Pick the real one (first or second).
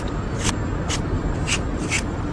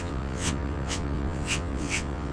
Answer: first